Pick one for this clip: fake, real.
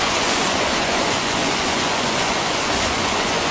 fake